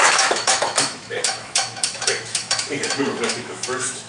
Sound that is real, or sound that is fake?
fake